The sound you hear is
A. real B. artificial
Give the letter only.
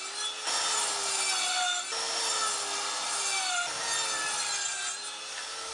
A